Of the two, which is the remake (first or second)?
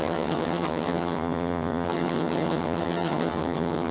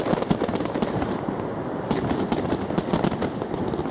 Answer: first